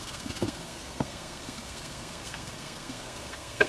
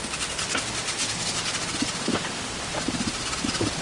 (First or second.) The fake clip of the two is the first